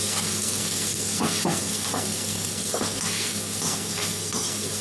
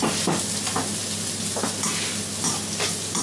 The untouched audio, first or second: second